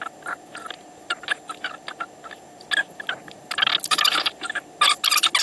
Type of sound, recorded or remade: recorded